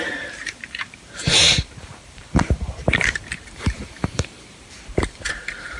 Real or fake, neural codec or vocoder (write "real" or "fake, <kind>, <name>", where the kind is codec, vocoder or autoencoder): fake, vocoder, BigVGAN v2